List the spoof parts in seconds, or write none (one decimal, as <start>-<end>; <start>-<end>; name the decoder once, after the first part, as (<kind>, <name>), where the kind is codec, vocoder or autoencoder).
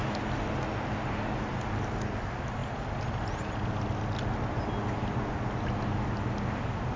none